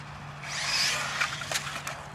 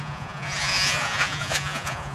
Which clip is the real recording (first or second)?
first